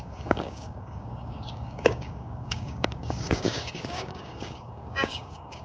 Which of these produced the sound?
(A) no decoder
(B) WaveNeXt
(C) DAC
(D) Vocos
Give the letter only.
C